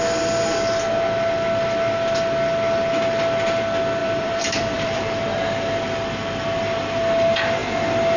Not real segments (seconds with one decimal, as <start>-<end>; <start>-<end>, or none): 4.0-5.2

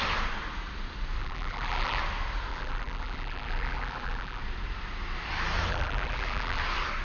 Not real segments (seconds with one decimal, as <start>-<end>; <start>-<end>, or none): 1.2-2.0; 2.5-4.4; 5.7-6.6

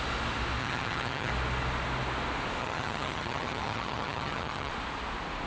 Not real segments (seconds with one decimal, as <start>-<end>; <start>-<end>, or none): 0.6-1.3; 2.6-4.7

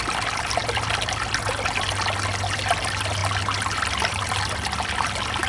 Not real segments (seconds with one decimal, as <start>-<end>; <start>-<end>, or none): none